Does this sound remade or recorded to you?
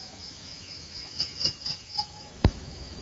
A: remade